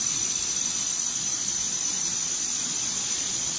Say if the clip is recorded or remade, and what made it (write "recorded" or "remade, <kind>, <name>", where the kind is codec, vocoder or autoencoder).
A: remade, vocoder, Vocos